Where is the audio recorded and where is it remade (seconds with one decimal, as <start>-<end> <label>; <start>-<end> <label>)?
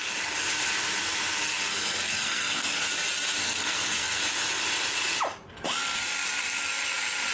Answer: 0.0-1.7 recorded; 1.7-2.9 remade; 2.9-3.4 recorded; 3.4-4.2 remade; 4.2-7.3 recorded